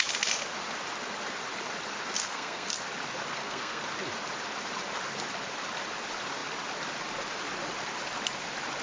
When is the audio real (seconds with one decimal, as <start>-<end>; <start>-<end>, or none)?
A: 0.0-2.2; 2.7-3.3; 3.8-8.8